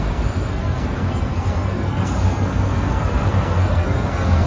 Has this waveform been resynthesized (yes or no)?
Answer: yes